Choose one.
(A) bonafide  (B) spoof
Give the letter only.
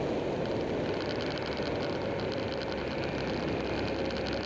A